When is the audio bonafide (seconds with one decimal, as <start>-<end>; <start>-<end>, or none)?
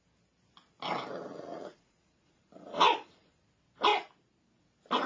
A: 0.0-1.3; 3.4-5.1